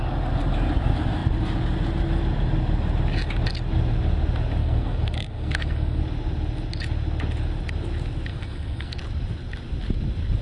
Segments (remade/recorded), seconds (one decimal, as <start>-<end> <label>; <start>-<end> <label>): 0.0-4.6 recorded; 4.6-6.0 remade; 6.0-8.3 recorded; 8.3-9.0 remade; 9.0-10.4 recorded